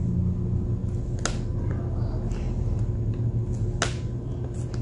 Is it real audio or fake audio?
real